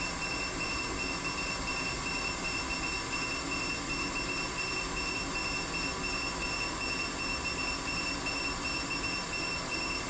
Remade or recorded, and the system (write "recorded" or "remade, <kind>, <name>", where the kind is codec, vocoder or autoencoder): recorded